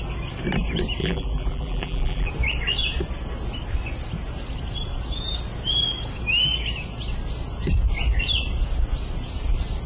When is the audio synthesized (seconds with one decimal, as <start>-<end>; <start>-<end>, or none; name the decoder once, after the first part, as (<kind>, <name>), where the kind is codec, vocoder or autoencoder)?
1.0-2.3 (vocoder, BigVGAN v2)